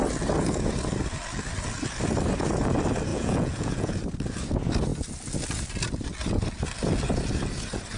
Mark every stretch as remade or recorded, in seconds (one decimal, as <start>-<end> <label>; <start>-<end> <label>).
0.0-3.1 recorded; 3.1-3.9 remade; 3.9-8.0 recorded